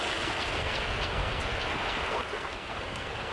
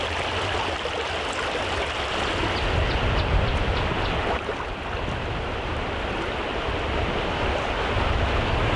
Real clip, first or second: second